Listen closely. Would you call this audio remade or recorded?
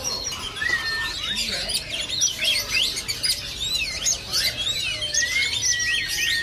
recorded